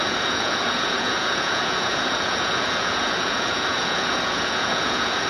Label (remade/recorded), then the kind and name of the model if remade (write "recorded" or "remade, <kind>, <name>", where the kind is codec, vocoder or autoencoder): remade, vocoder, Vocos